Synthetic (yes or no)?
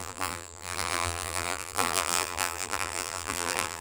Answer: yes